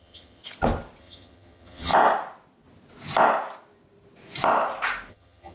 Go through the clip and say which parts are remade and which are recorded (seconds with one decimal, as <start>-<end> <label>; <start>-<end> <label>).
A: 0.0-0.4 remade; 0.4-1.0 recorded; 1.0-1.9 remade; 1.9-5.1 recorded; 5.1-5.5 remade